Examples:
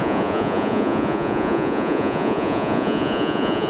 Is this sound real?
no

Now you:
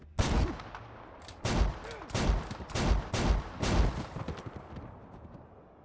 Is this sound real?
yes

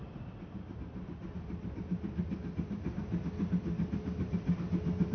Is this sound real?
yes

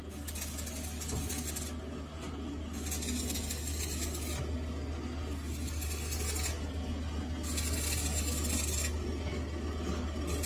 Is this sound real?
yes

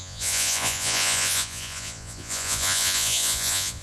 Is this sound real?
no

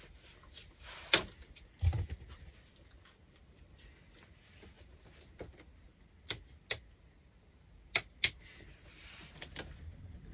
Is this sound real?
yes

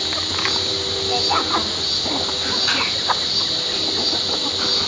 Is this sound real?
yes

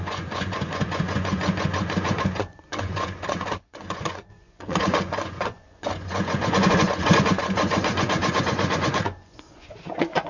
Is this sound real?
no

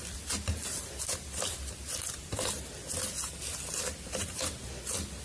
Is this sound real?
yes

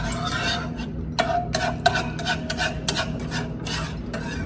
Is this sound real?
yes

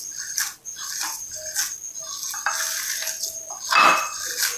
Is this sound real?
yes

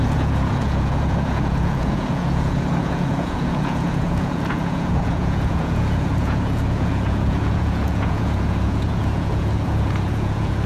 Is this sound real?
no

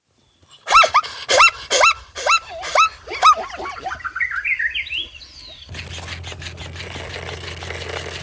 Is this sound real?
yes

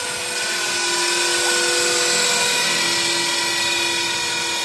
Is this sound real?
yes